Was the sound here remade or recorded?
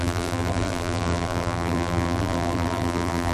remade